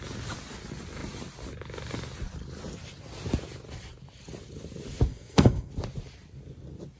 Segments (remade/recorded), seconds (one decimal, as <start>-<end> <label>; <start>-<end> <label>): 0.0-5.1 recorded; 5.1-5.7 remade; 5.7-7.0 recorded